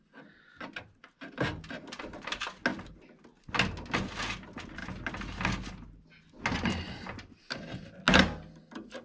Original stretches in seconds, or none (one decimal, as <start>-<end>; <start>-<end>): 0.0-9.0